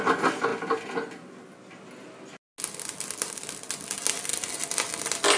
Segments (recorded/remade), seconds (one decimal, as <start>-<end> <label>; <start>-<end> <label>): 0.0-5.4 recorded